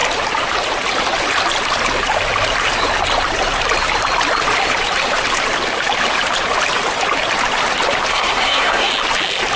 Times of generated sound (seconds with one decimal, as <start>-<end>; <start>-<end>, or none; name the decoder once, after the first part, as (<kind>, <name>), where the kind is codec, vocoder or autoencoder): 8.1-8.9 (codec, SNAC)

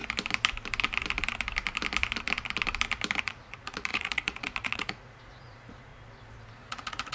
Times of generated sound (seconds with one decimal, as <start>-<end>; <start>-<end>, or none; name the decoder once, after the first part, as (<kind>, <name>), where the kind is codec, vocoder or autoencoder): 3.2-5.9 (vocoder, Vocos); 6.5-7.1

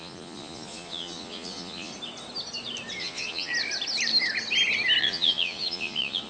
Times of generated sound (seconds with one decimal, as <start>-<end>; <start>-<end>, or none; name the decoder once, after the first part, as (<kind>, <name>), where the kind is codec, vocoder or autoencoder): 0.0-1.9 (vocoder, Vocos); 3.0-3.5; 5.0-6.3